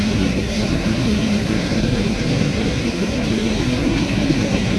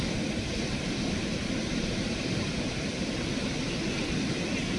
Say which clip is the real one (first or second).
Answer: second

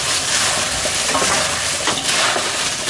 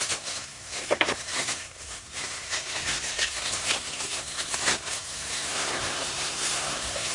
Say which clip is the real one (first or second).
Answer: first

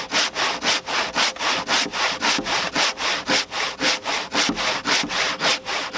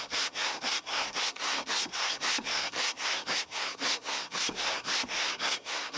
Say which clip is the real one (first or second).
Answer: first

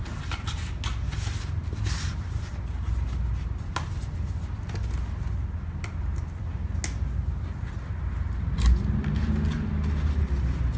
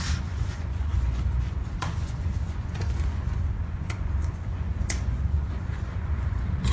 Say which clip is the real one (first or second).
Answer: first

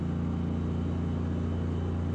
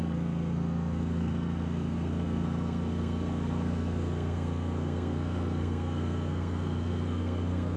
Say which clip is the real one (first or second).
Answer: first